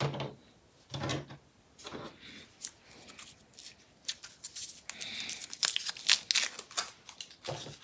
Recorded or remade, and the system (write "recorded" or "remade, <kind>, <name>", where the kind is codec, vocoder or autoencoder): recorded